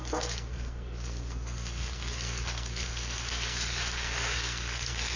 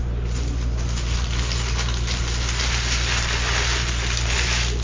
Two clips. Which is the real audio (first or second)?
second